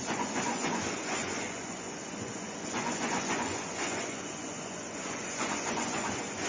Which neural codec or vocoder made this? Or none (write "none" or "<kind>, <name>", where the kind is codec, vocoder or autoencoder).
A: vocoder, Vocos